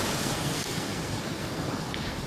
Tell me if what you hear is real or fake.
fake